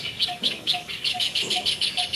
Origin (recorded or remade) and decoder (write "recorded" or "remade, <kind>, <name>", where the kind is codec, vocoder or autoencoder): remade, codec, DAC